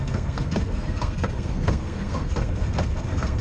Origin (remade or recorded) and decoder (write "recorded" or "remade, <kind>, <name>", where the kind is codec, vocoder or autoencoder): remade, codec, SNAC